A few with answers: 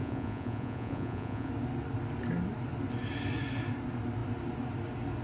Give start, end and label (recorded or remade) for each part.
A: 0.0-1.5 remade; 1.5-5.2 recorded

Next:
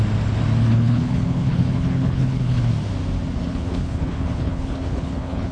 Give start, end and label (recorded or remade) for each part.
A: 0.0-0.7 recorded; 0.7-2.7 remade; 2.7-3.5 recorded; 3.5-5.5 remade

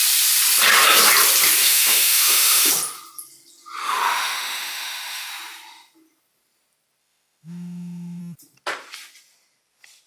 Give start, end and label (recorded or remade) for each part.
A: 0.0-1.6 recorded; 1.6-2.7 remade; 2.7-3.8 recorded; 3.8-5.3 remade; 5.3-7.0 recorded; 7.0-8.2 remade; 8.2-10.1 recorded

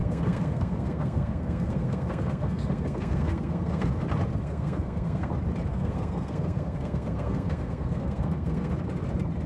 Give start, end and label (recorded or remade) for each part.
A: 0.0-3.9 remade; 3.9-4.3 recorded; 4.3-5.3 remade; 5.3-5.7 recorded; 5.7-8.7 remade; 8.7-9.5 recorded

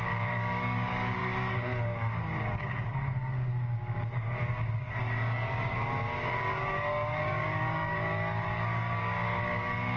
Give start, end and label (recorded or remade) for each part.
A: 0.0-10.0 remade

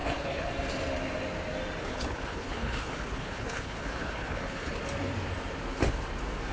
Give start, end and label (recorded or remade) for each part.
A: 0.0-0.5 remade; 0.5-1.8 recorded; 1.8-4.8 remade; 4.8-6.5 recorded

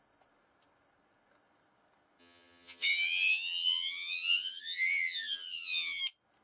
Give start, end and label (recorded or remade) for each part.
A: 0.0-2.2 recorded; 2.2-6.0 remade; 6.0-6.4 recorded

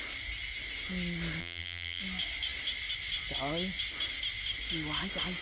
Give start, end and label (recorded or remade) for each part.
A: 0.0-1.4 recorded; 1.4-2.0 remade; 2.0-5.4 recorded